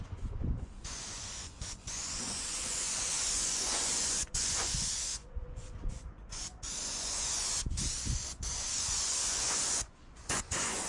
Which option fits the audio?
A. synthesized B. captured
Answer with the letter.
A